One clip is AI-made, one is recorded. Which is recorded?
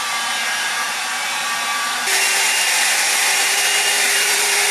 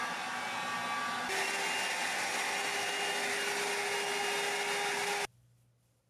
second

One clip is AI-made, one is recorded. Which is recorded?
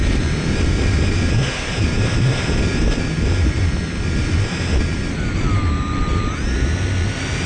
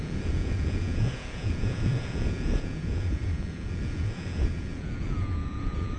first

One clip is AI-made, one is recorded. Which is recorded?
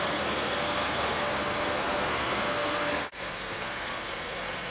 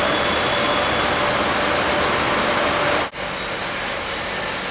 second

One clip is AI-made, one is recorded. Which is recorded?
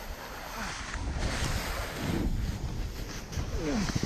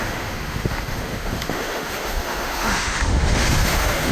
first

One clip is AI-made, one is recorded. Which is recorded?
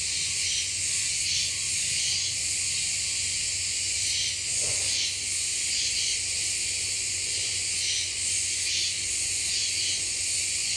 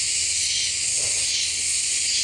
second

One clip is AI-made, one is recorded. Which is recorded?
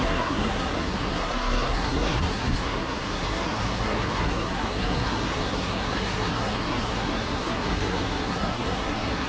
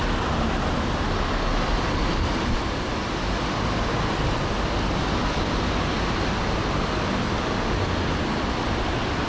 second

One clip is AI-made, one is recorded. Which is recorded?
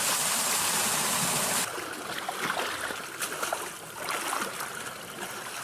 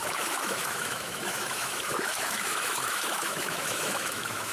first